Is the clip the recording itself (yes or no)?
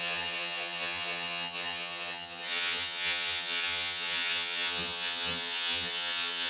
no